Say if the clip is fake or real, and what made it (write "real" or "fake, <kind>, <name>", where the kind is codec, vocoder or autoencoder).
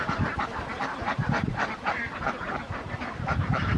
fake, vocoder, BigVGAN v2